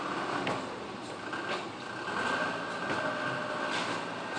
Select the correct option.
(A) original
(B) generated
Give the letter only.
A